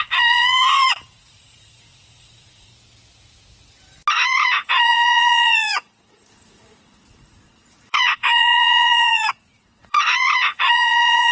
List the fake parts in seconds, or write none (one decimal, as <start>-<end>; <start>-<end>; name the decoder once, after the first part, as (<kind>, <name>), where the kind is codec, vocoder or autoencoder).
0.0-2.7 (vocoder, Vocos); 4.1-11.3